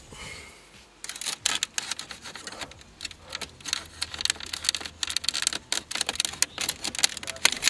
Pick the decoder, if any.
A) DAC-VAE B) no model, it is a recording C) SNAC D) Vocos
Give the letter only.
B